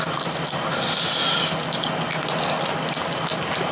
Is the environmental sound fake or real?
real